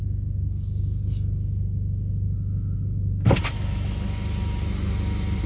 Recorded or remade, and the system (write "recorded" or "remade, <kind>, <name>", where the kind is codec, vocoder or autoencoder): recorded